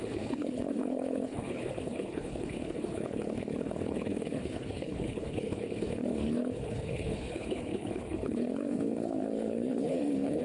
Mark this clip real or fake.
fake